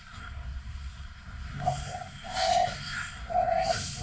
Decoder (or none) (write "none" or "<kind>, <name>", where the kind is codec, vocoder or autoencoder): codec, SNAC